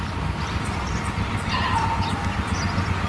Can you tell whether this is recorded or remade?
recorded